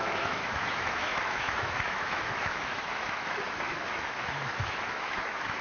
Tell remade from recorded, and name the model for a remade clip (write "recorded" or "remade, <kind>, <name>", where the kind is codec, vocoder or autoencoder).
remade, autoencoder, DAC-VAE